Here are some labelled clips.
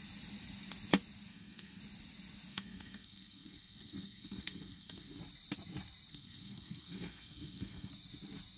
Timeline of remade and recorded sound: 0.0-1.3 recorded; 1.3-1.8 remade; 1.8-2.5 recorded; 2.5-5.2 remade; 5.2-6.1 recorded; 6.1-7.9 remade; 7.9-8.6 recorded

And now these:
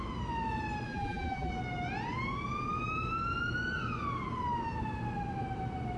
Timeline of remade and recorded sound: 0.0-0.9 recorded; 0.9-1.5 remade; 1.5-6.0 recorded

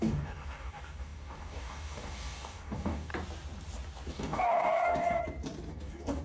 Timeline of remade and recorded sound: 0.0-3.1 remade; 3.1-4.1 recorded; 4.1-5.2 remade; 5.2-5.7 recorded; 5.7-6.2 remade

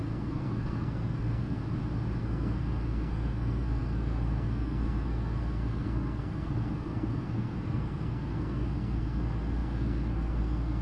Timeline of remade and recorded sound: 0.0-1.6 remade; 1.6-2.2 recorded; 2.2-10.8 remade

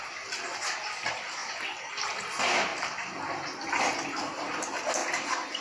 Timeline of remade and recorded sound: 0.0-5.6 recorded

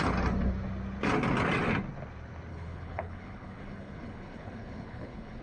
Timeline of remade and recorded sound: 0.0-2.5 recorded; 2.5-5.4 remade

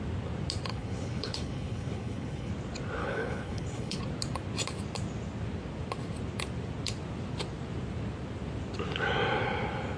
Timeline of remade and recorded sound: 0.0-0.7 recorded; 0.7-2.5 remade; 2.5-3.0 recorded; 3.0-4.0 remade; 4.0-10.0 recorded

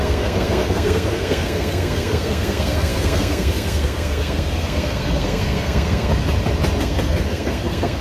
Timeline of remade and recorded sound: 0.0-6.1 remade; 6.1-6.8 recorded; 6.8-8.0 remade